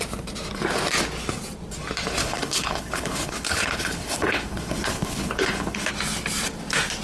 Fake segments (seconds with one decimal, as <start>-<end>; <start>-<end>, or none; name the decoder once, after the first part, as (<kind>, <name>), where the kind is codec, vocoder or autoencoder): 2.2-5.9 (codec, HILCodec)